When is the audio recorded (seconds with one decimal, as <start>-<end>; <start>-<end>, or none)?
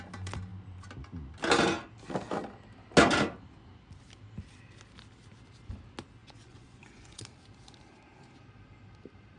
0.0-6.2; 7.2-9.4